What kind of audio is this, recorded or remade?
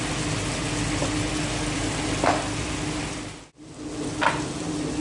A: recorded